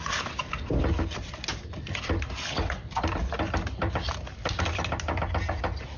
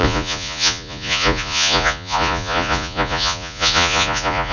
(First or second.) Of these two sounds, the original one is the first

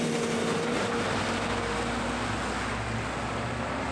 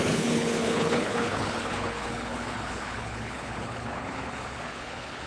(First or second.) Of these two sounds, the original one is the first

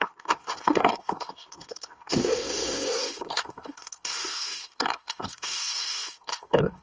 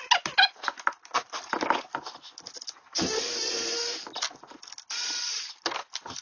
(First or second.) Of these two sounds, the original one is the second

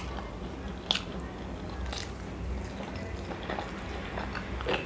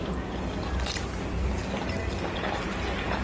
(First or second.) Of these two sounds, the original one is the first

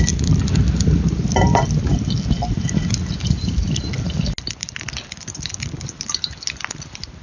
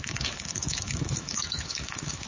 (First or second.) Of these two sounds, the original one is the first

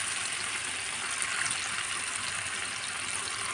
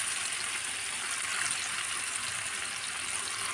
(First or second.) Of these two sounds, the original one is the second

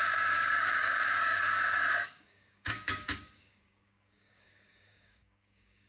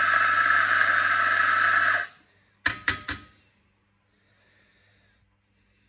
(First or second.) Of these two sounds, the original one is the second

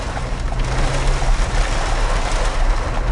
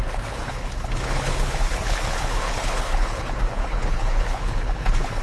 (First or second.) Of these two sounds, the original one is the first